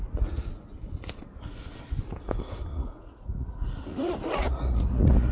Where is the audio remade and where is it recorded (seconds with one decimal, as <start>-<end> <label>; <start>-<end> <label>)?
0.0-2.7 recorded; 2.7-5.3 remade